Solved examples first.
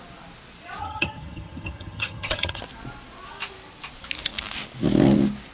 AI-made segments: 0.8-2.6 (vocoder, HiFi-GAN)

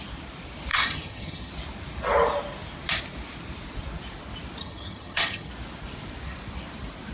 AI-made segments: 0.7-1.5 (vocoder, HiFi-GAN); 4.6-5.5

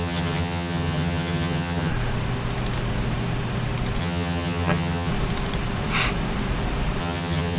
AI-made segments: 0.0-1.9 (vocoder, HiFi-GAN); 4.0-5.1; 7.0-7.6

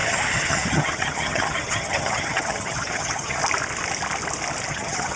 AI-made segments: 0.0-3.4 (vocoder, HiFi-GAN); 4.7-5.2

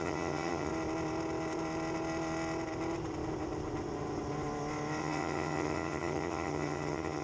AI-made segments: 0.0-0.7 (vocoder, HiFi-GAN); 5.0-7.2

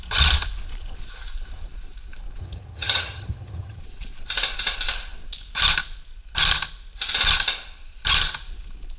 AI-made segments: 2.4-3.8 (vocoder, HiFi-GAN)

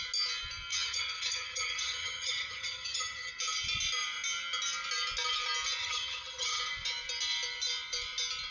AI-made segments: 0.7-3.3 (vocoder, HiFi-GAN); 5.8-6.6

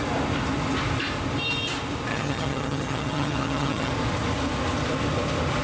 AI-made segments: 2.1-3.9 (vocoder, HiFi-GAN)